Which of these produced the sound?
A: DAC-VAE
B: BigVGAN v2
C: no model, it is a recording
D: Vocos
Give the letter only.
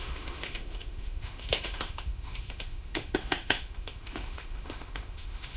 A